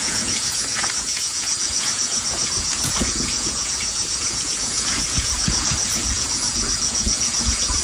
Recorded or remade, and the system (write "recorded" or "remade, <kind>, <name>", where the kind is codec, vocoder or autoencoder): remade, vocoder, Vocos